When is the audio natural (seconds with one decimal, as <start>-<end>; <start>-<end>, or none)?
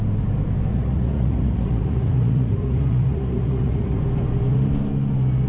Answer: 0.0-0.7; 4.0-5.5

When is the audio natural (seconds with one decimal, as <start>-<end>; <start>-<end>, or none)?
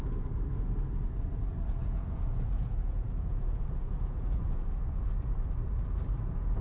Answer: 0.0-1.8; 5.0-6.6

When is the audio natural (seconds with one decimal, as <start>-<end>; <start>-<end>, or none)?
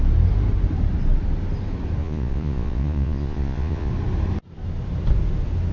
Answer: 0.0-2.0; 3.9-5.7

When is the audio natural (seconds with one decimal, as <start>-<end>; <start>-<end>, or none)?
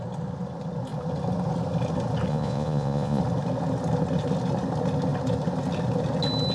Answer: 0.0-2.3; 3.2-6.5